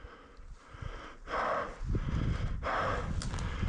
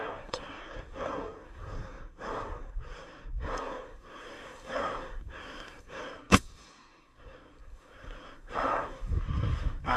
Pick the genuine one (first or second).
first